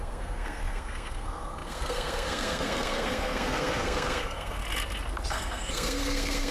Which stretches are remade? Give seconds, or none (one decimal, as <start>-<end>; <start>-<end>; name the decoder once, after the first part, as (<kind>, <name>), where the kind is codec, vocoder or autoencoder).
0.0-4.6 (codec, SNAC); 5.3-6.5